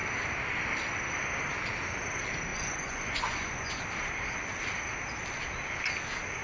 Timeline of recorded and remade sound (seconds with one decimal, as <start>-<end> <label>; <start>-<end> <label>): 0.0-2.5 recorded; 2.5-3.8 remade; 3.8-6.4 recorded